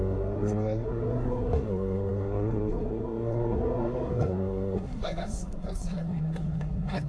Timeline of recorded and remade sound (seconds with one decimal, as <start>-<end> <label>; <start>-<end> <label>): 0.0-7.1 remade